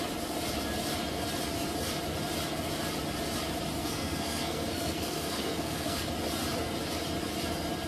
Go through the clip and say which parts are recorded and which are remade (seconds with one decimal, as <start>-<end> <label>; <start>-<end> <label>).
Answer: 0.0-3.8 recorded; 3.8-6.1 remade; 6.1-7.9 recorded